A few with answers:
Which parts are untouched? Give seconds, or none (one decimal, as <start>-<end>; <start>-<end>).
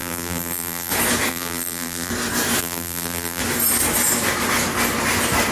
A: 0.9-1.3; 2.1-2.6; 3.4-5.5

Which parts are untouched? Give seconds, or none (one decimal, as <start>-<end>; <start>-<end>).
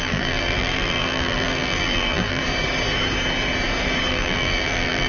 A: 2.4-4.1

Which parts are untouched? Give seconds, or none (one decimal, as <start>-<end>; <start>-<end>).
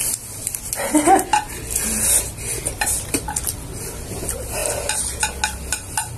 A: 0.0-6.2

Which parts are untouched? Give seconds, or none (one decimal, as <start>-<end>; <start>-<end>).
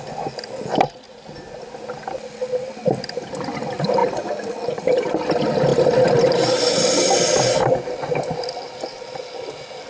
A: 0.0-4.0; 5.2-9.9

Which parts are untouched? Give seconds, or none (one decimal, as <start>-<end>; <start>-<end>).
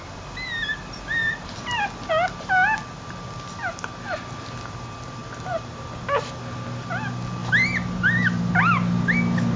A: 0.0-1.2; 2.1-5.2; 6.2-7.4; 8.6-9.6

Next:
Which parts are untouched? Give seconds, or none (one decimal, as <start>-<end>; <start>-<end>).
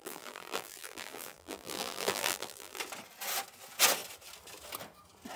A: 2.8-5.4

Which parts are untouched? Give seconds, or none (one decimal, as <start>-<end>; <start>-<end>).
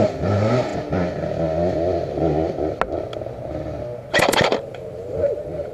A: 0.7-4.1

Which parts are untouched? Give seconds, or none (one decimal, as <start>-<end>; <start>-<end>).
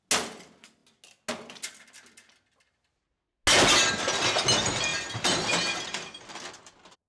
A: 0.0-4.9